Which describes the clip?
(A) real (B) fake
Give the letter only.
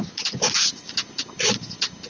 A